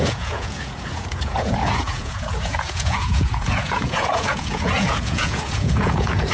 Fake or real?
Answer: fake